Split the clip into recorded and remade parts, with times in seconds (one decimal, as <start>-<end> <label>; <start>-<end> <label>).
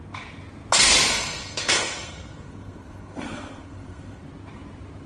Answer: 0.0-1.1 recorded; 1.1-4.2 remade; 4.2-5.1 recorded